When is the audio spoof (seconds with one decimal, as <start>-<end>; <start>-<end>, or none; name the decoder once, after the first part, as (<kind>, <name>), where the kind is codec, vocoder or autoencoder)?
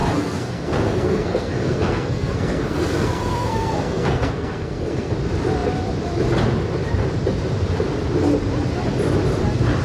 0.0-5.1 (codec, SNAC)